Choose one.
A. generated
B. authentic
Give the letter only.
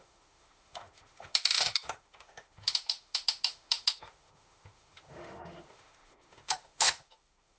A